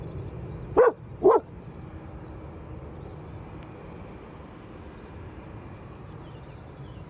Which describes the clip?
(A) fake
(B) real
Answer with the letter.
B